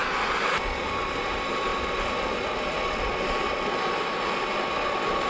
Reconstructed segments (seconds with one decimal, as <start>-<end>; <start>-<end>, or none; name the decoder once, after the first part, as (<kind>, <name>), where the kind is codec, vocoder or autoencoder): 0.8-1.7 (vocoder, BigVGAN v2)